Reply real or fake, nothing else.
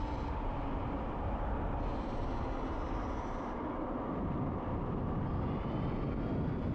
real